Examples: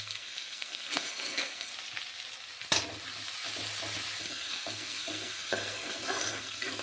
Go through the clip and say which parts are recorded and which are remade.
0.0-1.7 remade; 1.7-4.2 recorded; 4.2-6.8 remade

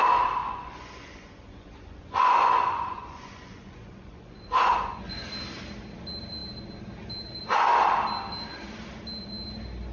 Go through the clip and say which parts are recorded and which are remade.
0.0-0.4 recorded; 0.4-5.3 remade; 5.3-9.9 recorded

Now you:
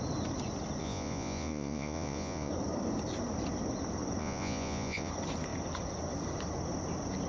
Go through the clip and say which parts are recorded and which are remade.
0.0-0.8 recorded; 0.8-2.5 remade; 2.5-4.2 recorded; 4.2-5.1 remade; 5.1-7.3 recorded